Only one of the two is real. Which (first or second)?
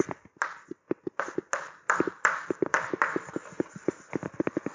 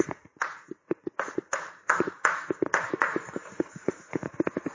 first